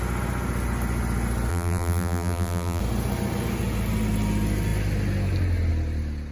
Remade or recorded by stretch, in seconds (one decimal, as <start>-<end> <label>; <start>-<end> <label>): 0.0-1.5 recorded; 1.5-2.8 remade; 2.8-6.3 recorded